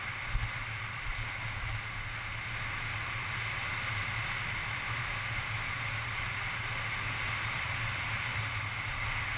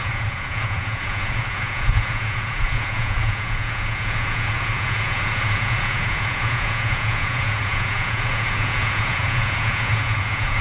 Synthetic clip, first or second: second